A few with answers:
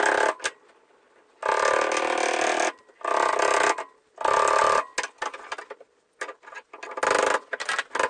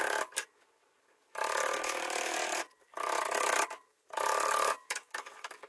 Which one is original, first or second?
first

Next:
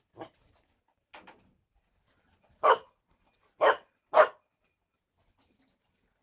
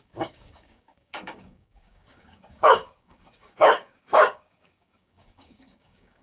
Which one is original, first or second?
first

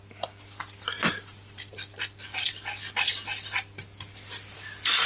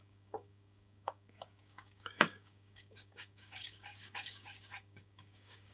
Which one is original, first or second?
first